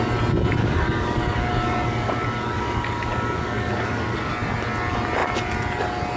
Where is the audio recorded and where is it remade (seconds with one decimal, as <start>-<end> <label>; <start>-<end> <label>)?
0.0-0.6 recorded; 0.6-4.3 remade; 4.3-6.2 recorded